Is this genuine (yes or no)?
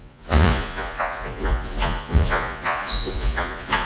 no